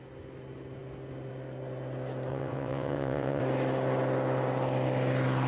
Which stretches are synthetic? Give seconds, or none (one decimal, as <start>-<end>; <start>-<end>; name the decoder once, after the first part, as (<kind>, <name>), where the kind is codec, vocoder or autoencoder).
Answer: 2.3-3.4 (vocoder, WaveNeXt)